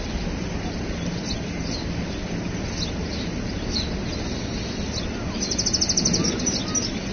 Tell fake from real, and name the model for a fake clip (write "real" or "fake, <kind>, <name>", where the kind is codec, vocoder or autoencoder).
real